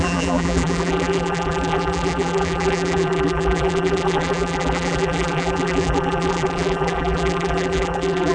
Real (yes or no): no